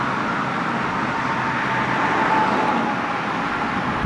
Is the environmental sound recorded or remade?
recorded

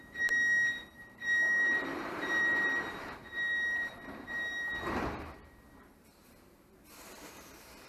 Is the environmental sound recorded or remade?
remade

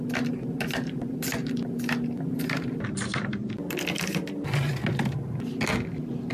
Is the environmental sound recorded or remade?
recorded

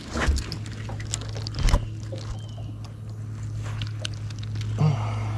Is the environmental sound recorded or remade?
recorded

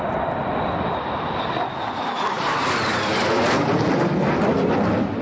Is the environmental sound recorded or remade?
recorded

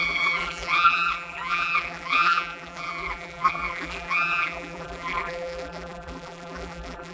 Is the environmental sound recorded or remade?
remade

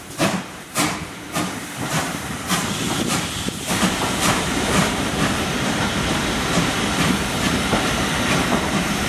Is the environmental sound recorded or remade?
remade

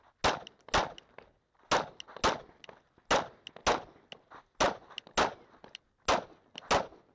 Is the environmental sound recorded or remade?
recorded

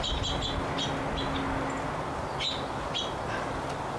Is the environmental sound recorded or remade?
recorded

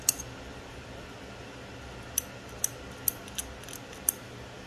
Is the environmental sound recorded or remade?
recorded